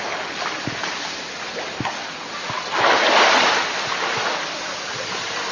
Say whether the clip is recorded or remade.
recorded